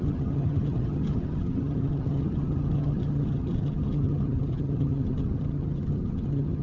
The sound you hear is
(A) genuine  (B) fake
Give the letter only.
B